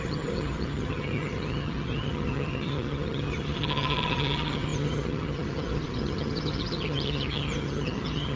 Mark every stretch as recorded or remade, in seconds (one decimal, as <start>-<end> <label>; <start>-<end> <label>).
0.0-8.4 remade